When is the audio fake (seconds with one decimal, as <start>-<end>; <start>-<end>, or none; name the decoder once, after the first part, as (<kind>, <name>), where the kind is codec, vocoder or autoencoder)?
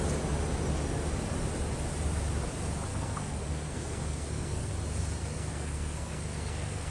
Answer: 2.9-4.7 (codec, SNAC); 5.2-6.9